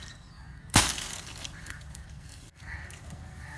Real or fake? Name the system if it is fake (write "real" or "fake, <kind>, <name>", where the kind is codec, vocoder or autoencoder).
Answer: fake, codec, SNAC